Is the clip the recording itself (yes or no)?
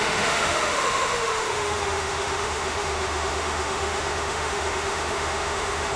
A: no